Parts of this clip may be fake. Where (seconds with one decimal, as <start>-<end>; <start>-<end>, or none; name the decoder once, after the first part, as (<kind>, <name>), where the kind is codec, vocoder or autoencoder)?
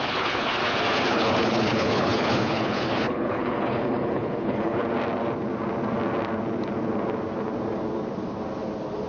0.0-0.6 (codec, HILCodec); 1.1-4.8